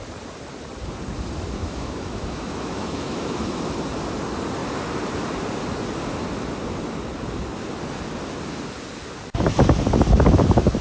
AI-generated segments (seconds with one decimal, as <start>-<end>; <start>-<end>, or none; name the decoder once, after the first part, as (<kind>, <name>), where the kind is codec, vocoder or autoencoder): 1.6-3.6 (autoencoder, DAC-VAE)